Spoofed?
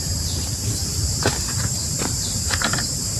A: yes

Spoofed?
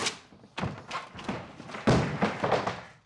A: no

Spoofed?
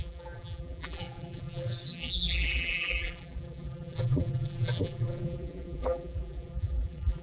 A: yes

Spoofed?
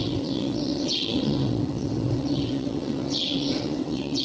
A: yes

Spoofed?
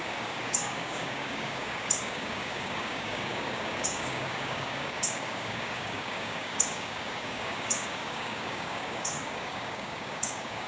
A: yes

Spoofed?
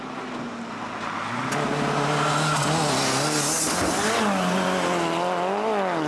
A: no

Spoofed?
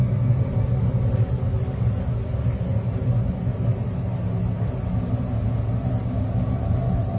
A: no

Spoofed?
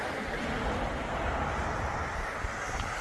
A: no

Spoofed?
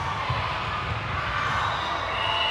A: no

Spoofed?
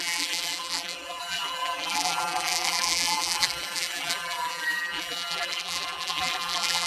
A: yes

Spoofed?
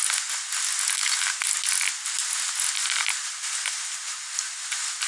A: no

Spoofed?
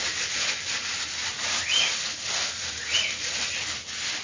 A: no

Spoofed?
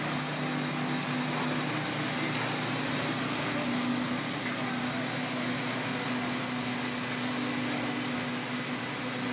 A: no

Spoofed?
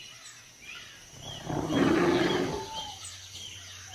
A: no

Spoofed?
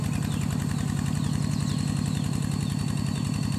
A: yes